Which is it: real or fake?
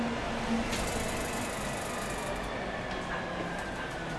real